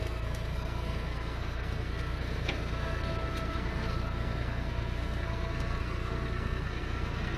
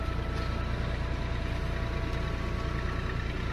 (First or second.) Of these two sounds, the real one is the second